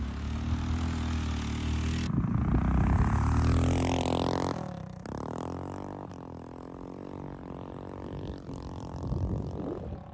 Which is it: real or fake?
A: real